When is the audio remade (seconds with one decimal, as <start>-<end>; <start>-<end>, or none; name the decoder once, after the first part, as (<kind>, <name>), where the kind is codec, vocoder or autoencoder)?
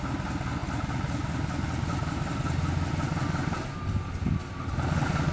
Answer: none